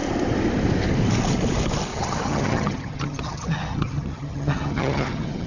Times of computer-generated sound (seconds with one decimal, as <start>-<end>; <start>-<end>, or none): 1.9-5.5